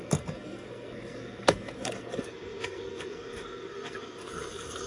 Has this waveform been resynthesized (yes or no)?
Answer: yes